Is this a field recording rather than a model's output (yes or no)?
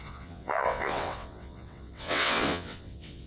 no